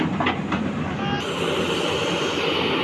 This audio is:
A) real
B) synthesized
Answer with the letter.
A